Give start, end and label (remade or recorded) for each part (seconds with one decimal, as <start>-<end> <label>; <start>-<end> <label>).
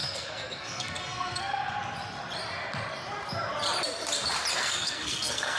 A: 0.0-1.6 remade; 1.6-4.5 recorded; 4.5-5.6 remade